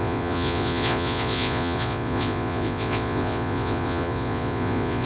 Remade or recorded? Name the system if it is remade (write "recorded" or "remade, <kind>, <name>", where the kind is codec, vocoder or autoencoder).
remade, vocoder, Vocos